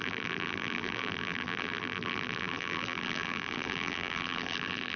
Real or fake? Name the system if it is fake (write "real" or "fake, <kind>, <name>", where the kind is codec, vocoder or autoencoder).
fake, vocoder, BigVGAN v2